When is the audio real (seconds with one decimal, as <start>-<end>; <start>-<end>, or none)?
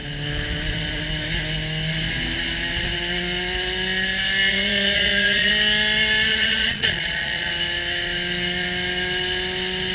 0.0-4.5; 5.5-6.3; 7.5-9.9